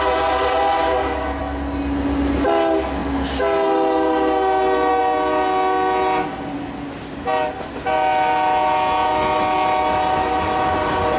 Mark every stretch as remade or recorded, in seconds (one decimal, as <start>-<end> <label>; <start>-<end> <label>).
0.0-0.8 recorded; 0.8-1.4 remade; 1.4-11.2 recorded